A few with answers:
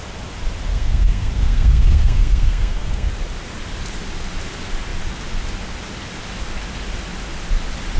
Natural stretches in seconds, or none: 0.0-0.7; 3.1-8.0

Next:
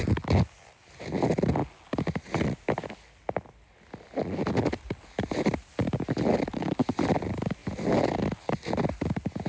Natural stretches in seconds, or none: 0.0-9.5

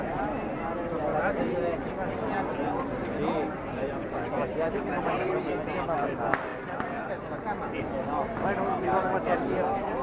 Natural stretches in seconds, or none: 0.0-4.5; 5.4-10.0

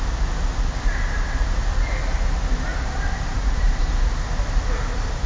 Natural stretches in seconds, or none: 0.0-2.7; 3.8-5.3

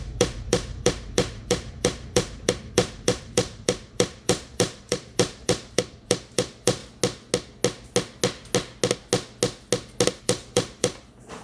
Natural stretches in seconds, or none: 6.8-10.2